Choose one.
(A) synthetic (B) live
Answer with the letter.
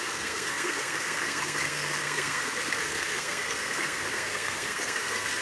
A